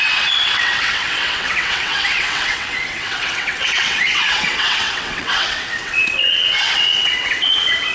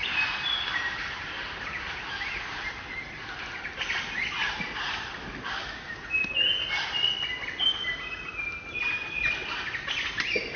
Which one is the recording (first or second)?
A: second